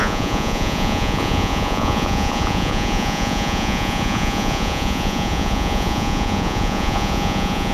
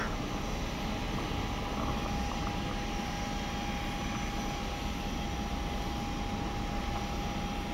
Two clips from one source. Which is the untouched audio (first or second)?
second